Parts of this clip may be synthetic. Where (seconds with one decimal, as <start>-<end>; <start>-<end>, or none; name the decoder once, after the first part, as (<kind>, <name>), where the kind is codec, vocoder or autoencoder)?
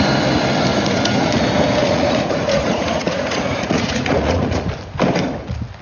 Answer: 0.7-1.3 (vocoder, Vocos); 1.8-4.7